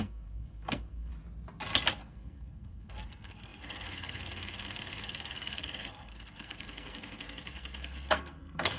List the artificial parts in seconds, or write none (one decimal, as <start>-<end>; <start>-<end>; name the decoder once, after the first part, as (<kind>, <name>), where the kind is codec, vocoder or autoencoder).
0.0-1.1 (codec, SNAC); 2.0-8.8